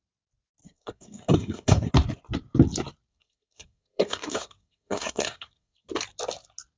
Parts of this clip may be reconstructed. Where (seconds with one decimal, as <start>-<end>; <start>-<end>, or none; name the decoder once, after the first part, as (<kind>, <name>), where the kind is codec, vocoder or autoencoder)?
0.6-1.9 (codec, SNAC); 3.1-5.9